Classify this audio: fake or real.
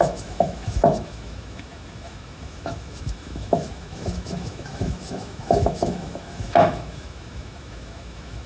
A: fake